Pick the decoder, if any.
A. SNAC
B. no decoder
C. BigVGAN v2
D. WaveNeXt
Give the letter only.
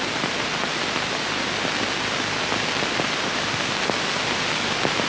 B